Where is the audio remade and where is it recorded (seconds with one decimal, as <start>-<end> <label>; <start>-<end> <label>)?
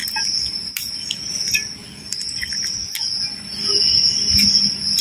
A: 0.0-5.0 recorded